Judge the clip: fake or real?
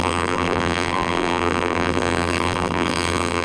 fake